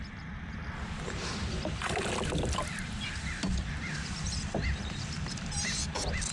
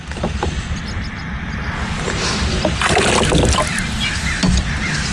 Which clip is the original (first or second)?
second